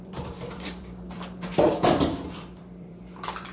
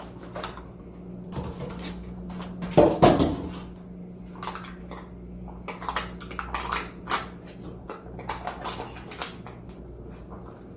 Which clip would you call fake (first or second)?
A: first